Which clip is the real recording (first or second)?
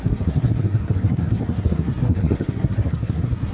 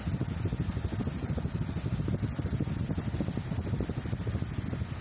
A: second